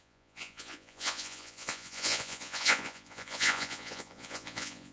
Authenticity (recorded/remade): remade